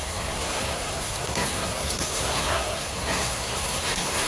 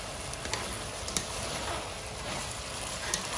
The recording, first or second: second